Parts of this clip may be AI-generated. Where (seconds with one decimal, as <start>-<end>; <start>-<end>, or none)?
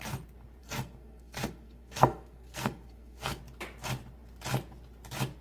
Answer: 0.6-3.4